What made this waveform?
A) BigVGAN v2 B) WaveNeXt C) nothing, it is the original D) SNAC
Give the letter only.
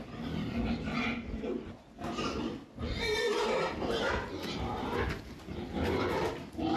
C